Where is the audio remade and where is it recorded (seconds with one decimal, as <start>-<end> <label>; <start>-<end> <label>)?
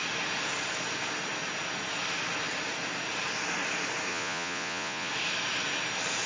0.0-4.1 recorded; 4.1-5.1 remade; 5.1-6.3 recorded